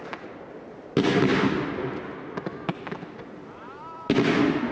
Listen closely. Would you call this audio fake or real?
real